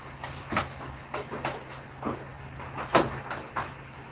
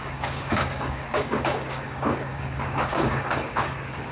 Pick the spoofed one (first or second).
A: second